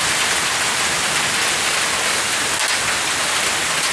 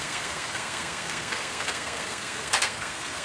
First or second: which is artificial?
second